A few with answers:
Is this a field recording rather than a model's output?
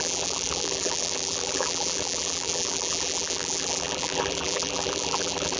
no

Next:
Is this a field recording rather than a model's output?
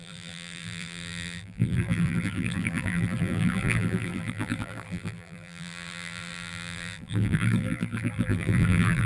no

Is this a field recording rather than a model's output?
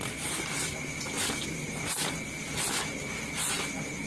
yes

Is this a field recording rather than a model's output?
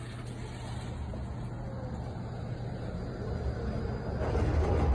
yes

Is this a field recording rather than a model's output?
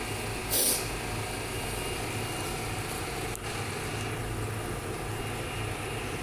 yes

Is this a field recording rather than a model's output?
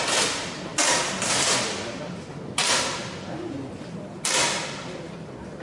yes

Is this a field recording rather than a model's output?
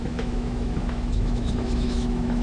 no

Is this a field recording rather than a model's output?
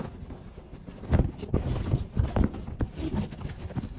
yes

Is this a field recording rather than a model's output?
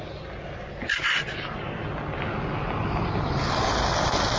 yes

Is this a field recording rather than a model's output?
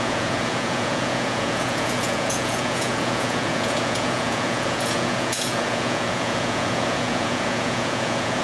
no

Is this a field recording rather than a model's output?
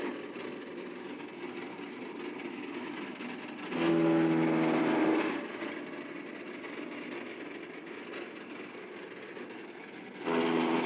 yes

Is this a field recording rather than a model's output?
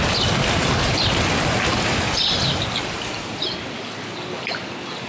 yes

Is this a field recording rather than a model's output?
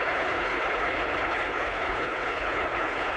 no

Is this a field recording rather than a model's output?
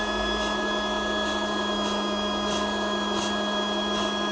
yes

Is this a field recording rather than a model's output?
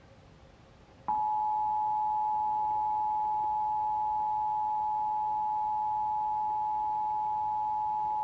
yes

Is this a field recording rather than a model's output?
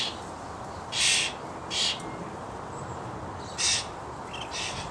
yes